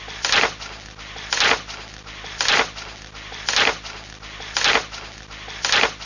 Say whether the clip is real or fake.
real